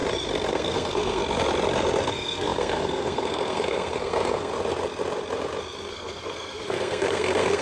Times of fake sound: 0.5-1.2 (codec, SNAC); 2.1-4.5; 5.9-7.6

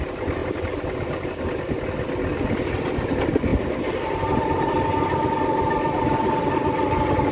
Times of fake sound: none

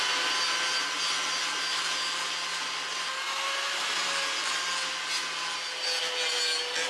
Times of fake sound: none